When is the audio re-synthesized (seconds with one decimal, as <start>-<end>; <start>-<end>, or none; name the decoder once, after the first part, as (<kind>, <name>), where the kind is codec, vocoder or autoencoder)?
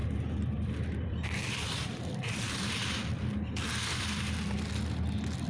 0.0-3.3 (vocoder, BigVGAN v2); 3.9-4.8